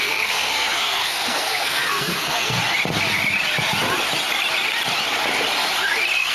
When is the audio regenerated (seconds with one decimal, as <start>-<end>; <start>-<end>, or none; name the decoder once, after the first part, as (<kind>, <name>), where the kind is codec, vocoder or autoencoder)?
0.0-2.6 (codec, SNAC)